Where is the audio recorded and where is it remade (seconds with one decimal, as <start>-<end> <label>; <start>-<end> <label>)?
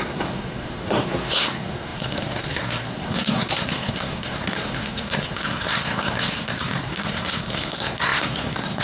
0.0-8.8 remade